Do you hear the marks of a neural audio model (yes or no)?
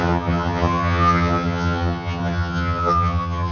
yes